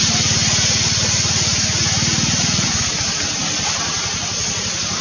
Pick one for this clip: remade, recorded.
recorded